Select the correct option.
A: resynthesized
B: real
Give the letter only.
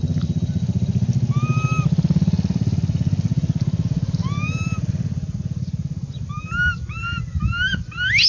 B